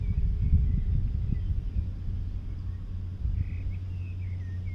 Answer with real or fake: real